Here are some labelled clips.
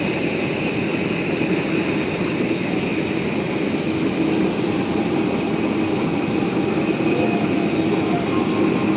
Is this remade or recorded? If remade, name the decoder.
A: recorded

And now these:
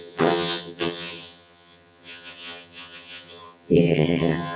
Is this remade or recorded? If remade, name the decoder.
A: remade, vocoder, HiFi-GAN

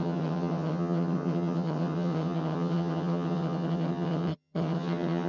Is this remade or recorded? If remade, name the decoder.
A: remade, vocoder, HiFi-GAN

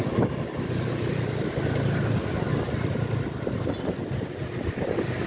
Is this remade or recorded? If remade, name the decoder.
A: recorded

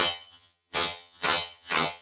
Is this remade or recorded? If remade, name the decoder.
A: remade, vocoder, HiFi-GAN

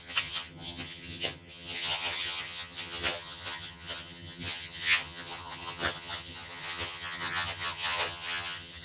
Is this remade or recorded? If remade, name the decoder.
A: remade, vocoder, HiFi-GAN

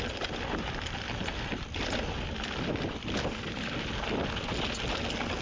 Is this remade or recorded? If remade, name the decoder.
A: recorded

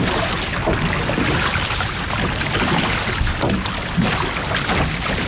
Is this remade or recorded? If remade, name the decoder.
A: recorded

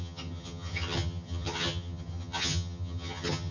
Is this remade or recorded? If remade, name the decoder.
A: remade, vocoder, HiFi-GAN